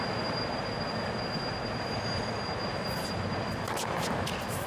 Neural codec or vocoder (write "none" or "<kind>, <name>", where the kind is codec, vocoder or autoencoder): none